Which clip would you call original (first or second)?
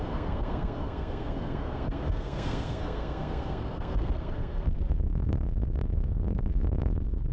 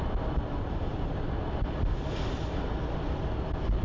second